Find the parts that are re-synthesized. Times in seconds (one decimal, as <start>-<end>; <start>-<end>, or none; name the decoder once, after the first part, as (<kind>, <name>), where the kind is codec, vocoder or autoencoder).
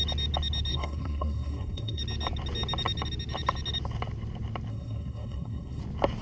0.7-2.0 (codec, SNAC); 4.7-5.8